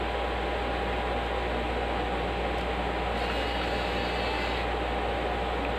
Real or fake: real